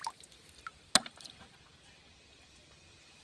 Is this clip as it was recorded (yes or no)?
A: yes